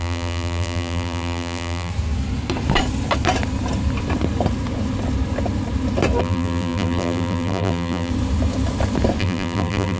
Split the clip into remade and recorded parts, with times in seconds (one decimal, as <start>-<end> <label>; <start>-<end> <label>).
0.0-1.9 remade; 1.9-6.2 recorded; 6.2-8.1 remade; 8.1-9.2 recorded; 9.2-10.0 remade